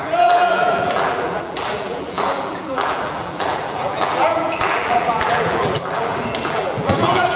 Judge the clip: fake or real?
fake